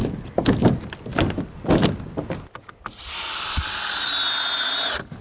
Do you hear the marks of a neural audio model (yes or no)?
no